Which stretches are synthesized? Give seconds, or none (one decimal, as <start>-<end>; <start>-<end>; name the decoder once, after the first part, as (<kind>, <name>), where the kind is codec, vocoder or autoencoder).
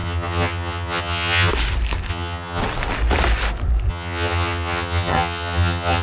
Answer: 0.0-1.5 (vocoder, HiFi-GAN); 2.1-2.6; 3.9-6.0